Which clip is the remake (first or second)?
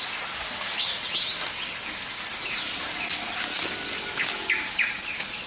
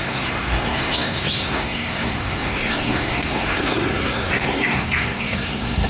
second